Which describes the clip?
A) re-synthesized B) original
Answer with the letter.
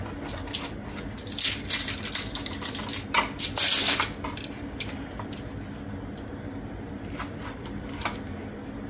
B